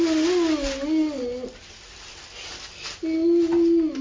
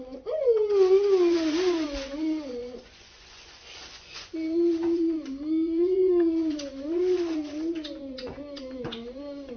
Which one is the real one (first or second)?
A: first